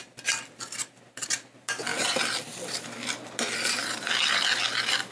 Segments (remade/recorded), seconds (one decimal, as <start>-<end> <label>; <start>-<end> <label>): 0.0-5.1 recorded